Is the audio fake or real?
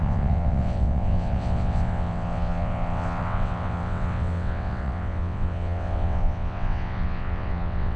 fake